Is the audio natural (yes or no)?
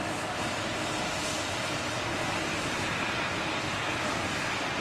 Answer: yes